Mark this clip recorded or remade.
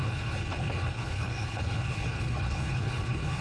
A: remade